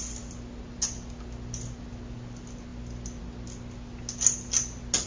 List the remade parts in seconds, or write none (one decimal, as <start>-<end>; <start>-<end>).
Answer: none

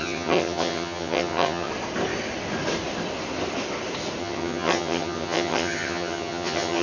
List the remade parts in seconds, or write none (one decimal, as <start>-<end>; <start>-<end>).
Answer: 0.0-1.7; 4.2-6.8

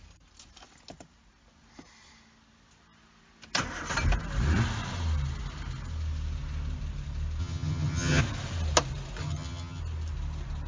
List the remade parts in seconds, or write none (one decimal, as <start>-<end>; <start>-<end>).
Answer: 7.4-8.2; 9.2-9.8

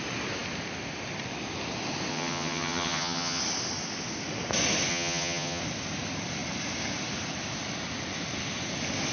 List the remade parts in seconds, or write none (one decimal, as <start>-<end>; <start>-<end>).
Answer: 2.1-3.4; 4.9-5.6

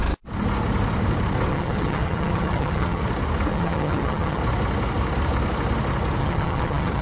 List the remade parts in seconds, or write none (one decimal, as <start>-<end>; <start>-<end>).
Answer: 1.5-3.0; 3.5-4.4; 6.2-7.0

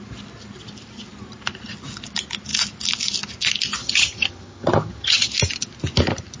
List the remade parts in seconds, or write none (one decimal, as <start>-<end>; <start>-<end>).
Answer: 3.8-5.3